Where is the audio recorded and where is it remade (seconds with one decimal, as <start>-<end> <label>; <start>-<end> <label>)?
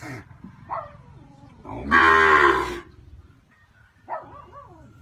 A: 0.0-5.0 recorded